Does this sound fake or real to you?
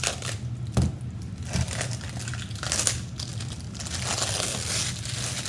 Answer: real